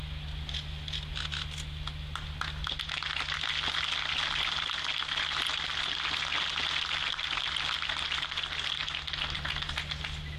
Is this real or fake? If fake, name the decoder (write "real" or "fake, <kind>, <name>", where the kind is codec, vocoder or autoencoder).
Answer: real